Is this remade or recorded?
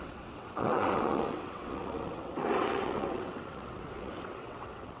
remade